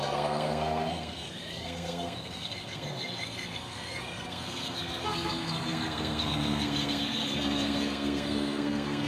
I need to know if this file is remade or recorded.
remade